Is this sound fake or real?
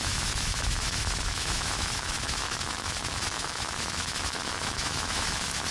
fake